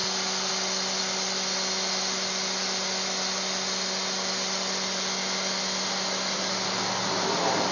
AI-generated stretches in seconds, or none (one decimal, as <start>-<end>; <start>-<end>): none